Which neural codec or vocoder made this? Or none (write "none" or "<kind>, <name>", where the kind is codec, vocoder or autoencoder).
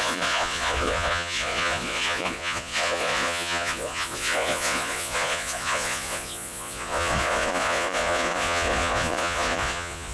vocoder, Vocos